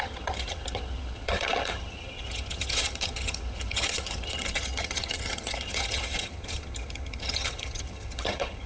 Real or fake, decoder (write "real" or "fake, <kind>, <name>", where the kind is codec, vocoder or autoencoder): fake, vocoder, HiFi-GAN